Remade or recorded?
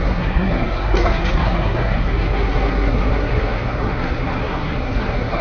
remade